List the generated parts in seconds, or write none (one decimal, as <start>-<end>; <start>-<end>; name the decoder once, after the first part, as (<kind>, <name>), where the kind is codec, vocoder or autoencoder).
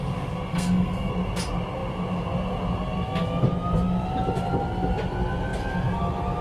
0.5-1.1 (codec, SNAC)